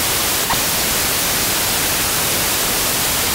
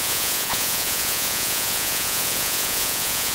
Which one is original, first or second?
first